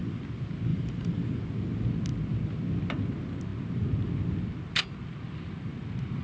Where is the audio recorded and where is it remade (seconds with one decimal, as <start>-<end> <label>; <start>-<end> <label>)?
0.0-0.7 recorded; 0.7-1.4 remade; 1.4-6.2 recorded